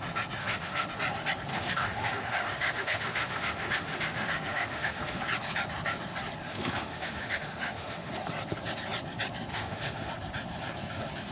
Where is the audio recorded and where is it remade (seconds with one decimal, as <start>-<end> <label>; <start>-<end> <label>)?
0.0-0.4 recorded; 0.4-0.9 remade; 0.9-1.5 recorded; 1.5-5.2 remade; 5.2-6.5 recorded; 6.5-8.1 remade; 8.1-9.5 recorded; 9.5-10.1 remade; 10.1-11.3 recorded